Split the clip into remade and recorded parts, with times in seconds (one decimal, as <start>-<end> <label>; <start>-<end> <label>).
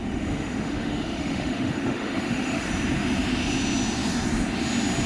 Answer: 0.0-2.7 remade; 2.7-5.1 recorded